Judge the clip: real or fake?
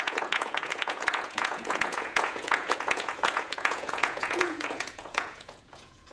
fake